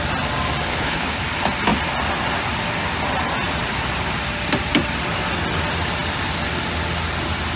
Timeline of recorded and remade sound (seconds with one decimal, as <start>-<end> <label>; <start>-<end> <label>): 0.0-0.7 recorded; 0.7-1.2 remade; 1.2-7.6 recorded